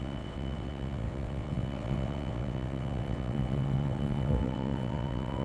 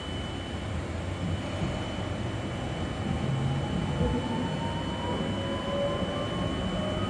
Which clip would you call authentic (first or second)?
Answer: second